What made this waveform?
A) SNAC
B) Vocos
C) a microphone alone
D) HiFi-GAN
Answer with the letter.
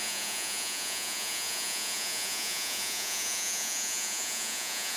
B